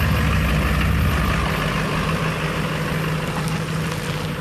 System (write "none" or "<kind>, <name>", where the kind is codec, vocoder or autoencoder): none